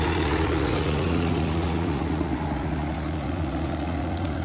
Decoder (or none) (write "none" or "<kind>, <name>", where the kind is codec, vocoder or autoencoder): vocoder, Vocos